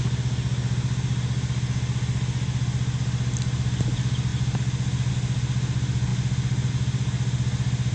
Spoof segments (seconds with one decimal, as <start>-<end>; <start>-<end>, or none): none